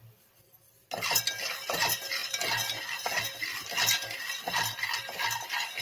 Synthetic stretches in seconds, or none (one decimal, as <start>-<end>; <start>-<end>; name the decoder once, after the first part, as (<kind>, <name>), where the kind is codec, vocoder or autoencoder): none